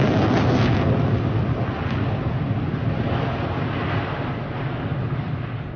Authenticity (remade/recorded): recorded